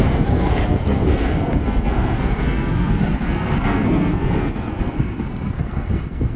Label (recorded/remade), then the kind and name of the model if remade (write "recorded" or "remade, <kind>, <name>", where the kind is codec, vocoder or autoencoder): remade, codec, SNAC